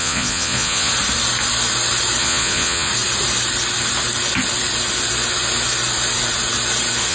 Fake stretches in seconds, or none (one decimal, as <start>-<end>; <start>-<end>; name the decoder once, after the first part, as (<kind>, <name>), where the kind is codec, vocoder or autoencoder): 0.0-0.9 (vocoder, Vocos); 2.2-2.9